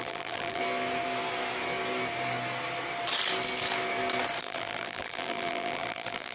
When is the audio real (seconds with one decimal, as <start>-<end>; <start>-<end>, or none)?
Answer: 0.6-4.4